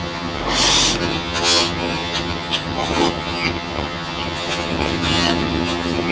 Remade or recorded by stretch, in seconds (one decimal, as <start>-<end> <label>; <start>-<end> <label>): 0.0-0.4 remade; 0.4-1.0 recorded; 1.0-6.1 remade